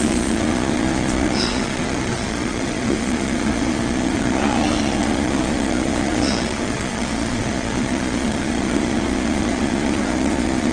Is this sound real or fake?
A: fake